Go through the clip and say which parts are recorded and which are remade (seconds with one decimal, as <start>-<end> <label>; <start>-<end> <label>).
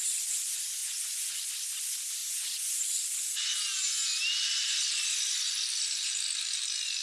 0.0-0.8 recorded; 0.8-1.4 remade; 1.4-2.2 recorded; 2.2-3.5 remade; 3.5-7.0 recorded